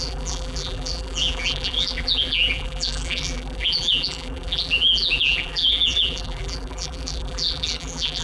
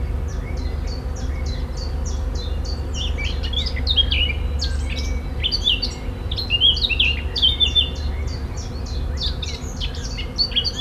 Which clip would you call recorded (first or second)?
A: second